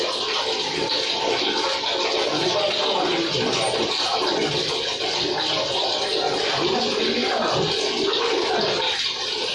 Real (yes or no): yes